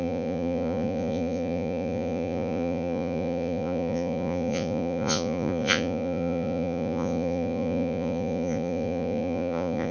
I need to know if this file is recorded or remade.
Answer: remade